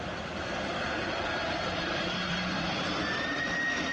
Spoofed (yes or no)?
yes